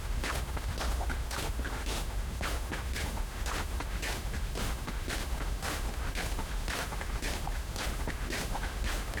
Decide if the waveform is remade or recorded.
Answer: remade